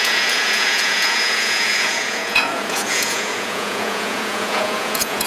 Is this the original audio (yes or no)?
no